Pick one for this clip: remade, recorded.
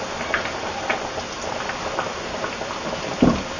recorded